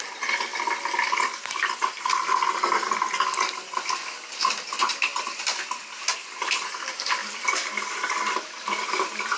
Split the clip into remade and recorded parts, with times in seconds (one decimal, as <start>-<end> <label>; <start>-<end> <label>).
0.0-0.5 remade; 0.5-4.6 recorded; 4.6-5.1 remade; 5.1-5.8 recorded; 5.8-9.4 remade